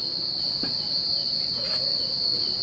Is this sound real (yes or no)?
yes